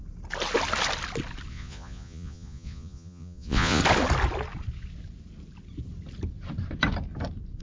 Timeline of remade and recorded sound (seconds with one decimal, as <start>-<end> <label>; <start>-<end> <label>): 0.0-1.5 recorded; 1.5-3.8 remade; 3.8-7.6 recorded